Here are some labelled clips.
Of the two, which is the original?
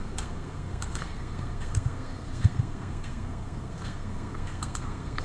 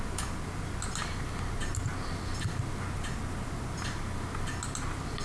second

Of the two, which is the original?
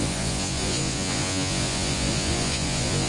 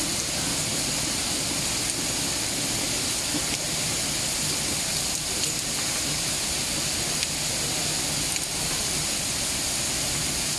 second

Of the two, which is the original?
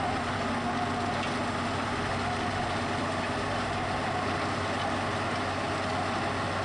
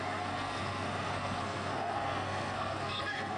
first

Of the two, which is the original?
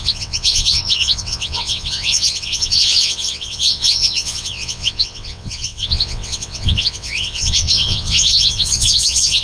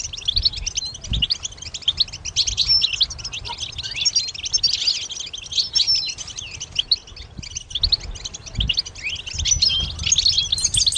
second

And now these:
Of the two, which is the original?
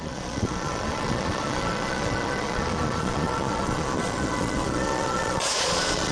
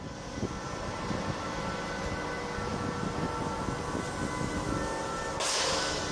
second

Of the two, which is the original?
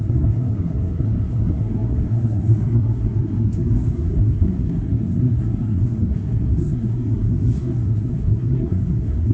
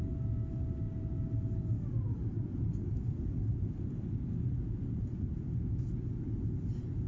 second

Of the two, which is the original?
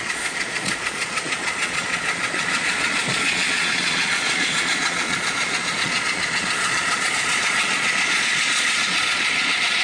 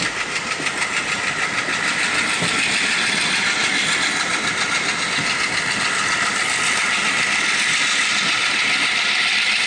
second